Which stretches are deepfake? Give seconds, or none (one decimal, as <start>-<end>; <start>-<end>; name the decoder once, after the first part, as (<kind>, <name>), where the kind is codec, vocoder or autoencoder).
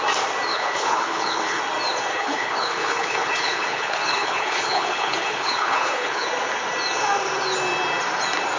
0.5-1.6 (codec, HILCodec); 2.1-6.3